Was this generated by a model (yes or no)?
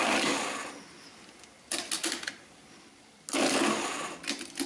no